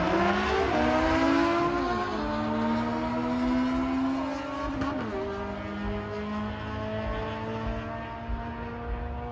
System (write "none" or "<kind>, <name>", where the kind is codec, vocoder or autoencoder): none